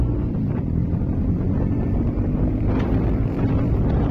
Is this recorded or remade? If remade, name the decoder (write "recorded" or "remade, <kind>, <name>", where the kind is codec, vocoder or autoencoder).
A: remade, vocoder, BigVGAN v2